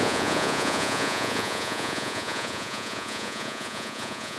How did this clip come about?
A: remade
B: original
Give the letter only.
A